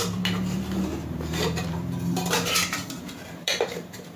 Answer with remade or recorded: remade